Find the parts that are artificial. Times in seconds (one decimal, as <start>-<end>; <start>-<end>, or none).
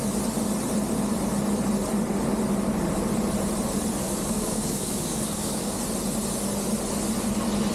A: 4.0-5.8